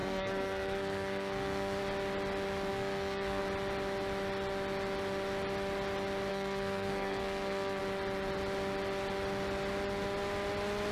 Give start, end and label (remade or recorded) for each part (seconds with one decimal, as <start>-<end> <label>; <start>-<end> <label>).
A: 0.0-1.8 remade; 1.8-2.7 recorded; 2.7-3.4 remade; 3.4-6.3 recorded; 6.3-7.8 remade; 7.8-10.9 recorded